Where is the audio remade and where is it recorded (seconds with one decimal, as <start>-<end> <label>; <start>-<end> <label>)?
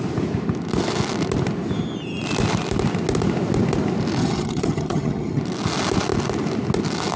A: 0.0-4.2 recorded; 4.2-5.4 remade; 5.4-7.2 recorded